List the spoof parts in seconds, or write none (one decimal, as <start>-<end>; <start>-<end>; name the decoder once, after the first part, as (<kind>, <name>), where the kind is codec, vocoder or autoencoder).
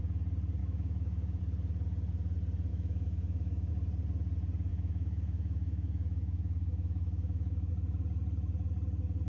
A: 0.6-1.4 (autoencoder, DAC-VAE); 2.7-3.7; 4.7-7.7